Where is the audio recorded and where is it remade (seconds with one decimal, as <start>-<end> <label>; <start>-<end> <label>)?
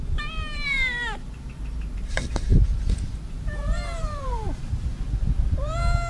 0.0-2.5 remade; 2.5-3.3 recorded; 3.3-6.1 remade